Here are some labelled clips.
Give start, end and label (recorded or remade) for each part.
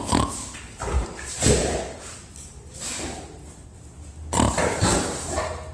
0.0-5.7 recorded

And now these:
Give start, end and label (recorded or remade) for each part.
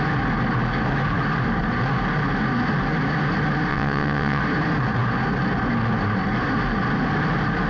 0.0-3.7 recorded; 3.7-4.4 remade; 4.4-7.7 recorded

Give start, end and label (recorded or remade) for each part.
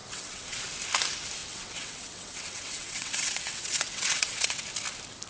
0.0-0.6 remade; 0.6-1.4 recorded; 1.4-4.6 remade; 4.6-5.3 recorded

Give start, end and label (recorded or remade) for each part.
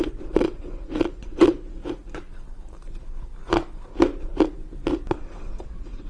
0.0-1.8 remade; 1.8-5.1 recorded; 5.1-6.1 remade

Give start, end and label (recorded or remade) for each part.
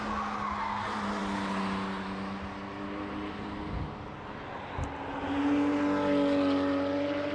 0.0-7.3 recorded